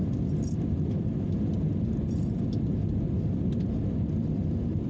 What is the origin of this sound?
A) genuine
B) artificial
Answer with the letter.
A